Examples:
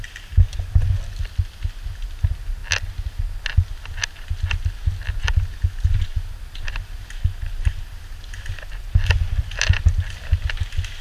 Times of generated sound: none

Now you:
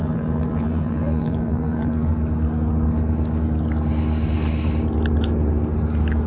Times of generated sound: 0.0-2.1 (vocoder, BigVGAN v2)

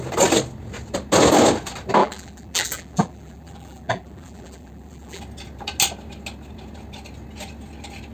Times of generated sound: 2.0-5.2 (vocoder, BigVGAN v2)

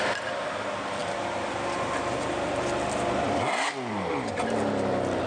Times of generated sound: none

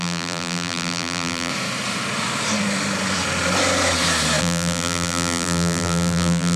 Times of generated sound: 0.0-1.5 (vocoder, BigVGAN v2); 4.4-6.6